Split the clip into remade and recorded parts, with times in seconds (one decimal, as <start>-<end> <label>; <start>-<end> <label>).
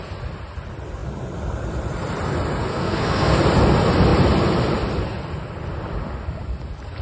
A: 0.0-2.7 recorded; 2.7-3.4 remade; 3.4-7.0 recorded